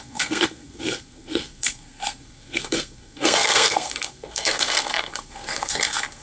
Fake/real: fake